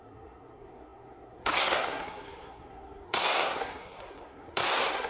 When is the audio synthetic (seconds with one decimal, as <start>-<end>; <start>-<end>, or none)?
0.0-5.1